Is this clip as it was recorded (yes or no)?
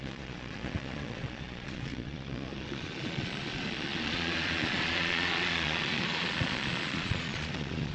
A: no